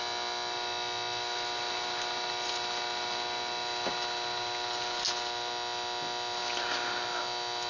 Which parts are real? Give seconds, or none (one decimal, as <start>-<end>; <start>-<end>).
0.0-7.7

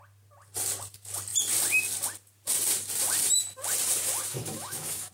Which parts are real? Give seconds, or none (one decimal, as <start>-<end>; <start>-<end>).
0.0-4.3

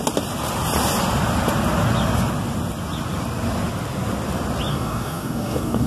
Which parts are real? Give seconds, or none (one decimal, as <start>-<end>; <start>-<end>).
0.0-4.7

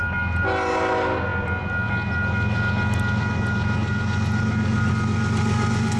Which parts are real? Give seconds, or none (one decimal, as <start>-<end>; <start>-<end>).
0.0-6.0

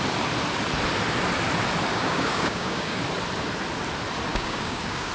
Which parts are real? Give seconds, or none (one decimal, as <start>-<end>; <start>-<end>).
0.0-1.9; 3.0-4.3